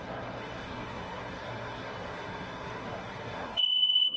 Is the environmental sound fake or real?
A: fake